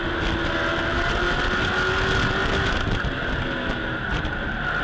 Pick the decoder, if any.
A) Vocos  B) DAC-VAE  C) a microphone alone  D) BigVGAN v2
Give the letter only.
C